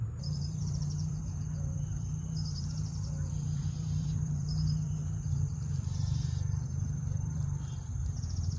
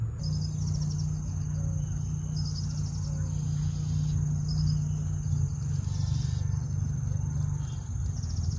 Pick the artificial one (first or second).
first